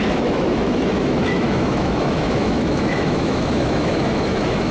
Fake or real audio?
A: fake